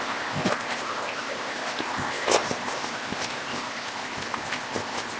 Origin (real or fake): fake